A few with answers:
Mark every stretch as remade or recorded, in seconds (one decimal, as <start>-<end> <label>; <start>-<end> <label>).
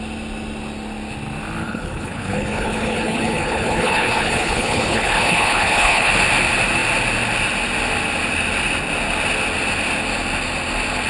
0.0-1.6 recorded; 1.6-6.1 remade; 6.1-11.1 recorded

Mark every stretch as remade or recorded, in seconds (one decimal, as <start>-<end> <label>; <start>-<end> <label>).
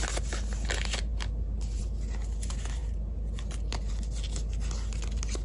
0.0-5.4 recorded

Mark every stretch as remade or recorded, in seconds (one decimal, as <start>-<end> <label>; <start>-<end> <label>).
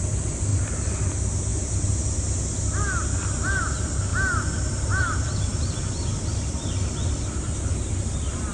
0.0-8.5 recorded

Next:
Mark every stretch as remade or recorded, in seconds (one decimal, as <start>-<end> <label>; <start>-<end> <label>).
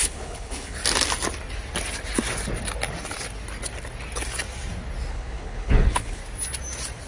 0.0-0.8 remade; 0.8-5.1 recorded; 5.1-6.2 remade; 6.2-7.1 recorded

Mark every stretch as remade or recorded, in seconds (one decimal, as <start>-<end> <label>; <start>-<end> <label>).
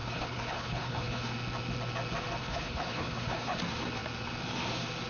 0.0-1.2 remade; 1.2-2.4 recorded; 2.4-3.6 remade; 3.6-5.1 recorded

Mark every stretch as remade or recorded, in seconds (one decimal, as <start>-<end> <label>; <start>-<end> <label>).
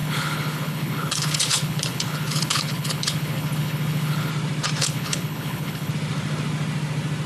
0.0-4.3 remade; 4.3-4.8 recorded; 4.8-5.9 remade; 5.9-7.3 recorded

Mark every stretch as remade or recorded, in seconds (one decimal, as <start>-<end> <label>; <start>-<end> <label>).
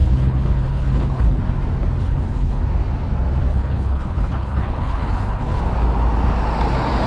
0.0-1.4 remade; 1.4-2.0 recorded; 2.0-2.6 remade; 2.6-3.5 recorded; 3.5-5.6 remade; 5.6-7.1 recorded